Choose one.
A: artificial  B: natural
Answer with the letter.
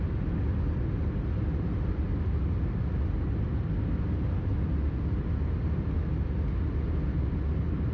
B